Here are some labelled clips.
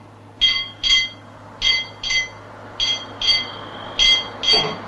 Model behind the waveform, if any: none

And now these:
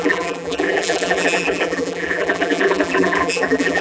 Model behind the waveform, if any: vocoder, BigVGAN v2